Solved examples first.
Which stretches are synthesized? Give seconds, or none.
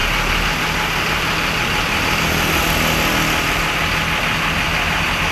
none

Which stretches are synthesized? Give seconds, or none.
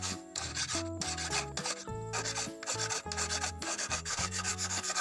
0.0-0.5 (codec, SNAC); 3.5-5.0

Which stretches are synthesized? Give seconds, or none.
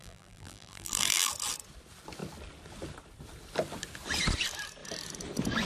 0.0-1.3 (vocoder, BigVGAN v2)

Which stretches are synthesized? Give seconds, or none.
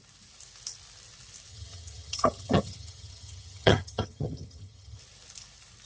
1.5-5.0 (vocoder, HiFi-GAN)